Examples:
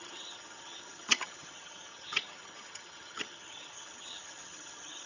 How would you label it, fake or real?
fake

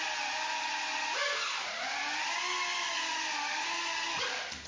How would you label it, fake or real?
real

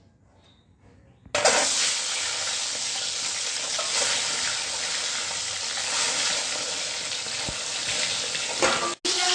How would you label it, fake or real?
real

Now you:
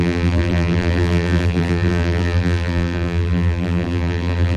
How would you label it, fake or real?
fake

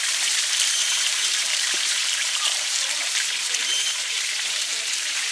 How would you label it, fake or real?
fake